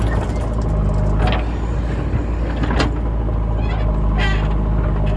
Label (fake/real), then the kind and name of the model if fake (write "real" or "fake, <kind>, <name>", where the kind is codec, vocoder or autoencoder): real